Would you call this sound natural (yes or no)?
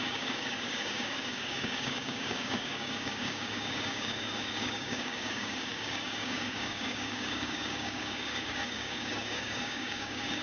no